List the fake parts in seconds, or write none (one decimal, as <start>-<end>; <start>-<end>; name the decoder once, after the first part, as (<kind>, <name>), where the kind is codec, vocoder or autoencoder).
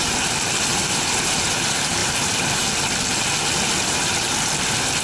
0.7-1.4 (vocoder, BigVGAN v2); 2.0-2.6